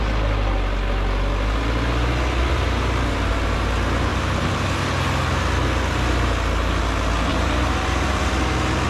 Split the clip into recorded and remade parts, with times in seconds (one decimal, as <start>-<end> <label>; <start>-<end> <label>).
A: 0.0-7.3 recorded; 7.3-8.3 remade; 8.3-8.9 recorded

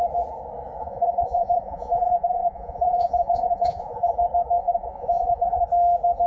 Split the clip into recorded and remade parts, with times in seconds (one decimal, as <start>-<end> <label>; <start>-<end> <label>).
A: 0.0-0.8 recorded; 0.8-4.1 remade; 4.1-4.6 recorded; 4.6-5.6 remade; 5.6-6.3 recorded

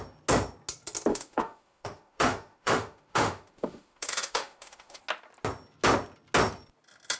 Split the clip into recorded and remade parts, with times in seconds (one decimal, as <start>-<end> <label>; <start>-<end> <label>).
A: 0.0-1.1 recorded; 1.1-5.0 remade; 5.0-7.2 recorded

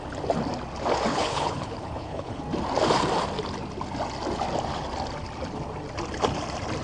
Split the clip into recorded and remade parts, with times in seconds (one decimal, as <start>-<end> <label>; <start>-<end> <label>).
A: 0.0-1.1 recorded; 1.1-2.4 remade; 2.4-6.8 recorded